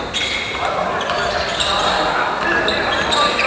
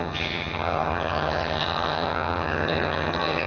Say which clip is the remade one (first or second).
second